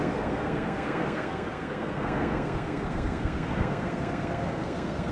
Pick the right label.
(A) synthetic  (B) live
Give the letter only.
A